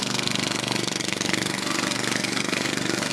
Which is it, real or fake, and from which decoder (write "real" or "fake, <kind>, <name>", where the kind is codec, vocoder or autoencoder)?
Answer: fake, codec, SNAC